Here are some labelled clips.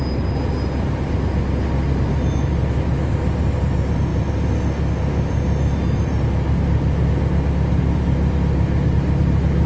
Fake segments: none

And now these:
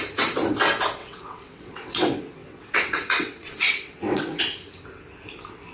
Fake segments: 1.0-4.4 (vocoder, WaveNeXt)

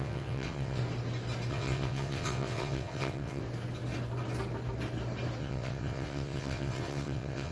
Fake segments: 0.0-0.8 (vocoder, WaveNeXt); 1.5-3.4; 5.4-7.5